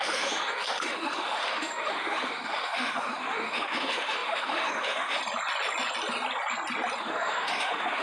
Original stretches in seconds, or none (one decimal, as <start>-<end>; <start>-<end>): 5.2-7.0